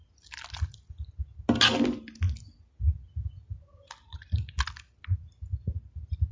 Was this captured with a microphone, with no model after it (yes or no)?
yes